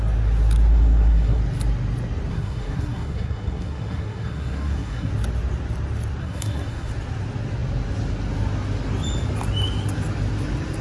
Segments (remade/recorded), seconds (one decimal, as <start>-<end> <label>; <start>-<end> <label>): 0.0-0.7 recorded; 0.7-1.4 remade; 1.4-2.3 recorded; 2.3-5.1 remade; 5.1-6.2 recorded; 6.2-6.9 remade; 6.9-10.8 recorded